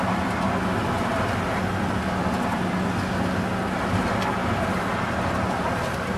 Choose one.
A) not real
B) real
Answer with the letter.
B